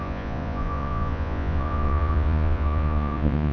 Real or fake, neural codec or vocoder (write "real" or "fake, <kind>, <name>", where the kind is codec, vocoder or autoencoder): fake, vocoder, Vocos